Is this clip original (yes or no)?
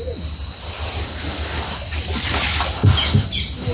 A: yes